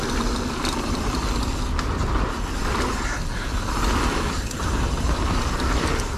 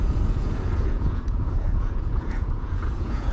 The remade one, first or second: second